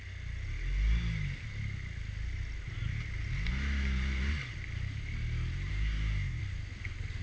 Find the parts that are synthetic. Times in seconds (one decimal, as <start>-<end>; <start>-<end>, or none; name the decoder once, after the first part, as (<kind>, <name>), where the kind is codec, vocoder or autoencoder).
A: 5.7-6.4 (codec, DAC)

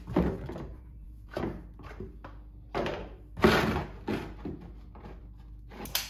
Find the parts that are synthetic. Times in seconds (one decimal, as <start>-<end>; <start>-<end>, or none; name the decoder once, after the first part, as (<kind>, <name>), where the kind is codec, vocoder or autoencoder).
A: 0.7-1.4 (vocoder, Vocos)

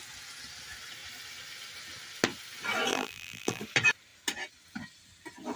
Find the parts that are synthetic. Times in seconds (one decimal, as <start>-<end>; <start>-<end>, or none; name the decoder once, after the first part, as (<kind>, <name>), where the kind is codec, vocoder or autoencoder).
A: 2.9-3.6 (vocoder, BigVGAN v2)

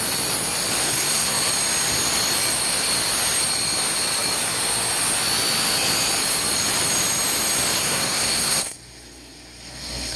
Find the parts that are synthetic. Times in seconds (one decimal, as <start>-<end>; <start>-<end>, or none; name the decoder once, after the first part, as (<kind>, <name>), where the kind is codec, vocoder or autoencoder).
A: 0.8-1.5 (codec, SNAC); 7.8-10.2

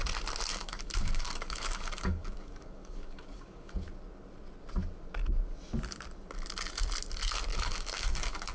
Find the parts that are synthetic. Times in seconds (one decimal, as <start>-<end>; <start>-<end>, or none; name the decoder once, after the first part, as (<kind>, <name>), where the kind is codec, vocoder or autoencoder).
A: 0.5-3.9 (codec, DAC); 7.5-8.5